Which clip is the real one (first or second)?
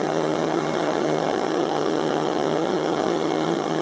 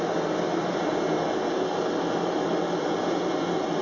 second